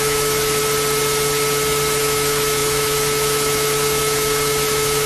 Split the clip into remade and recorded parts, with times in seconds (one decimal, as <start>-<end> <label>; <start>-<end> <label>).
0.0-0.6 remade; 0.6-2.0 recorded; 2.0-5.1 remade